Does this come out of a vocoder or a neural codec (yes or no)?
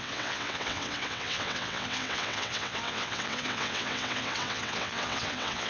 yes